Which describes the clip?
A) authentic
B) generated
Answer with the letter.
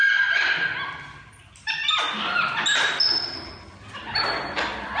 A